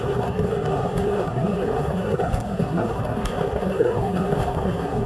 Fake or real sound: fake